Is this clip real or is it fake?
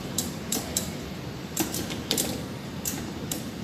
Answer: fake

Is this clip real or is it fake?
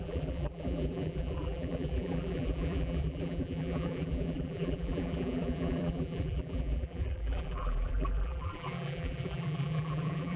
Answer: fake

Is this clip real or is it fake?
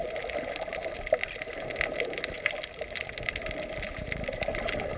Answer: real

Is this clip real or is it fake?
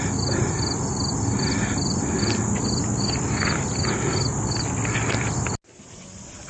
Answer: real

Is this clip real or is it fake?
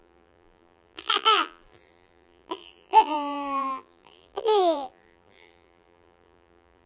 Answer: fake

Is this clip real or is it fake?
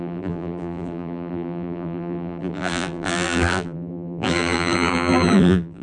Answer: fake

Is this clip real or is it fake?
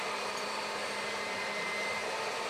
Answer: fake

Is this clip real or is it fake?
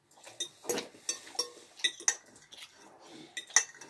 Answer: real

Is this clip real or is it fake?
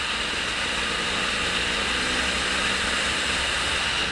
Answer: real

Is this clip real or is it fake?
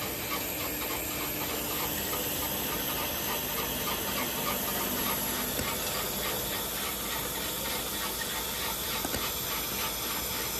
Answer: real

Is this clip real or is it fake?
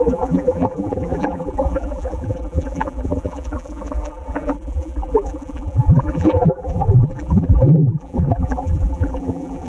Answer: fake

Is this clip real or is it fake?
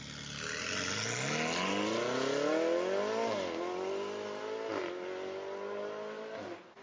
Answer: real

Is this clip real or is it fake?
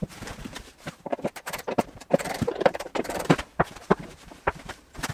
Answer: fake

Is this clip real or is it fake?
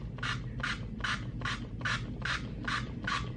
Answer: real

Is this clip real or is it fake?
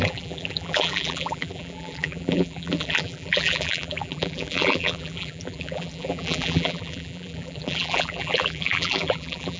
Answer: fake